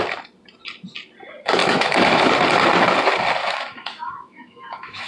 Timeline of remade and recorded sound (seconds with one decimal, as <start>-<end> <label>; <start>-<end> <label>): 0.0-1.6 recorded; 1.6-2.3 remade; 2.3-3.4 recorded; 3.4-5.1 remade